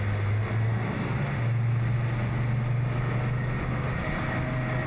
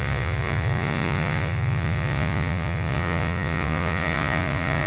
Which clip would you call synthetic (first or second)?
second